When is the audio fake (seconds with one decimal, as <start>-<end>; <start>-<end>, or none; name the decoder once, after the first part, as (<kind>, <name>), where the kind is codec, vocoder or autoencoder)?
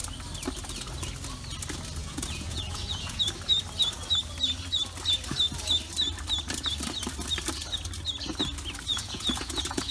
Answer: 2.0-3.2 (vocoder, Vocos); 8.9-9.9